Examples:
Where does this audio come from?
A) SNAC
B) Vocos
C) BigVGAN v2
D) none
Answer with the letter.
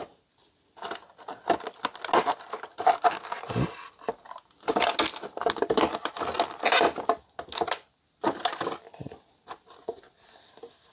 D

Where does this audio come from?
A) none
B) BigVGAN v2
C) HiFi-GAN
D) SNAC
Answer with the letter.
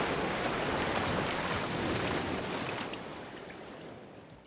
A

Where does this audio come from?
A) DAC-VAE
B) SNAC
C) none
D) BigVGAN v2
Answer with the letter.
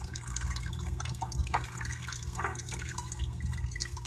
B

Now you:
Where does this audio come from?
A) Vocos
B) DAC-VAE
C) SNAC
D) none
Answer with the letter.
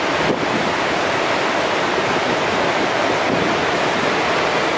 D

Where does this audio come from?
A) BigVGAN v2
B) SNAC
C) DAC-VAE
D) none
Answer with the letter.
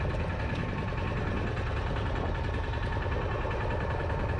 D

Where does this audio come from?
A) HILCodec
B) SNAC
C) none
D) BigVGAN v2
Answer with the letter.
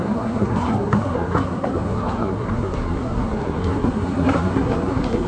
B